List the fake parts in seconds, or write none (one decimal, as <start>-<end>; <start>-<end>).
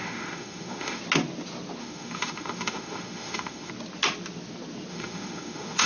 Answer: 0.0-1.0; 1.8-3.7; 4.9-5.9